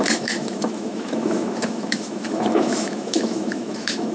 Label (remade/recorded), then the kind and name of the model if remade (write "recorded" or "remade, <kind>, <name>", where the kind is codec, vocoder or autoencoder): remade, autoencoder, DAC-VAE